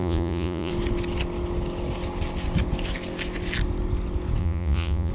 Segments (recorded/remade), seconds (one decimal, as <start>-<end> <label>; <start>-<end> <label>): 0.0-0.7 remade; 0.7-4.4 recorded; 4.4-5.1 remade